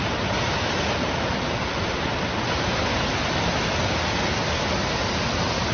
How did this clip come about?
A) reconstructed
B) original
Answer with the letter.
B